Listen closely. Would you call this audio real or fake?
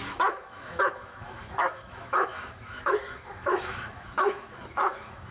fake